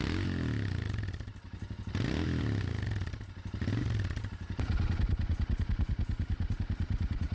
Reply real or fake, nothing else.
real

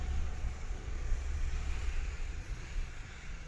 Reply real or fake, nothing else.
fake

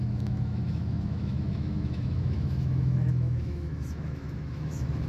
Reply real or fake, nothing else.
fake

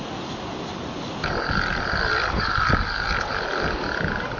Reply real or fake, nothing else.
real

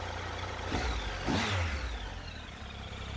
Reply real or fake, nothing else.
real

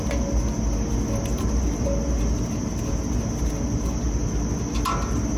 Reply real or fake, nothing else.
real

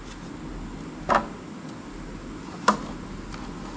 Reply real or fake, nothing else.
real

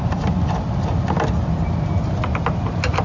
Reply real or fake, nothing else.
real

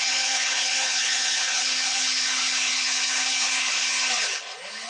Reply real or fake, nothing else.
fake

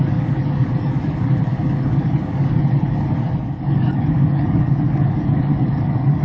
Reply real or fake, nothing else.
fake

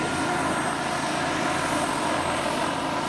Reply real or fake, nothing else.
real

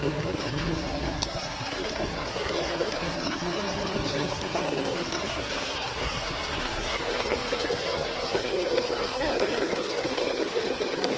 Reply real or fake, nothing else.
fake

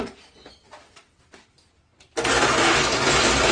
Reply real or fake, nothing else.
real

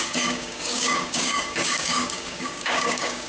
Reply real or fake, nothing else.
fake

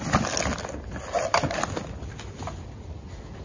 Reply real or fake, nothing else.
real